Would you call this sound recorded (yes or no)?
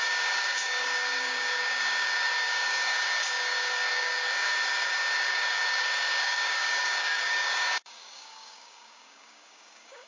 no